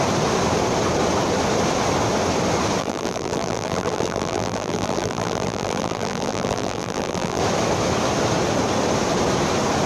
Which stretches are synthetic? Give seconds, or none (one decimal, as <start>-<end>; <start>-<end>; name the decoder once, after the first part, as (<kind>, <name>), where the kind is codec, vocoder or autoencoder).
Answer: 2.8-7.4 (vocoder, BigVGAN v2)